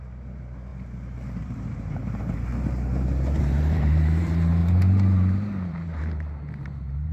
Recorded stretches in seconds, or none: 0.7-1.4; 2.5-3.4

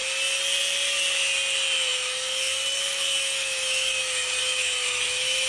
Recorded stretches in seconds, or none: 0.0-1.9

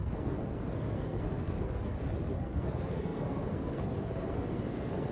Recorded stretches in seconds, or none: none